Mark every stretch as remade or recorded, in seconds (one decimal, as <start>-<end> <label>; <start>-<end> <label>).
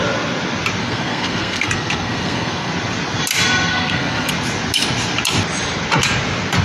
0.0-0.8 recorded; 0.8-2.7 remade; 2.7-3.7 recorded; 3.7-4.3 remade; 4.3-6.6 recorded